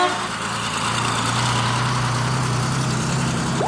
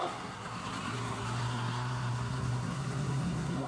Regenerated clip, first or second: second